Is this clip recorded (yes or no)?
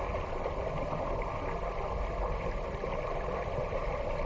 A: yes